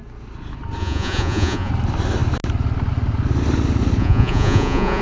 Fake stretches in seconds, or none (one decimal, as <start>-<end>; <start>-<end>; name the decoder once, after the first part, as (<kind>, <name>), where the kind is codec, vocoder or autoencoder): 0.8-1.7 (vocoder, Vocos); 4.0-5.0

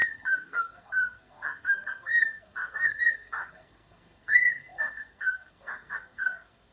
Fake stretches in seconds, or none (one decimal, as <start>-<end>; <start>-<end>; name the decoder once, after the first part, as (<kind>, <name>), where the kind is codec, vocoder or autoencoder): 0.0-6.7 (codec, SNAC)

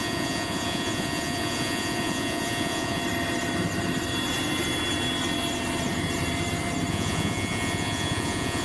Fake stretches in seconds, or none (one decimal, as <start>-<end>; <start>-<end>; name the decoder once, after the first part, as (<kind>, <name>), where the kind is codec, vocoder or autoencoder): 0.0-3.0 (vocoder, Vocos); 6.9-8.6